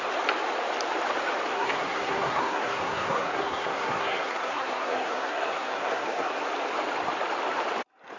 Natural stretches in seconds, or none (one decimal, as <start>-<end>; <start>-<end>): 0.0-1.5; 6.4-8.2